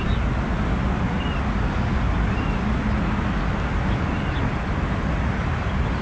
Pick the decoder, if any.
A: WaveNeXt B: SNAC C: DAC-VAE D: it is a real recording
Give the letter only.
D